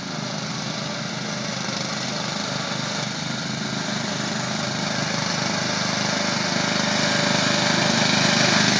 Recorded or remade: recorded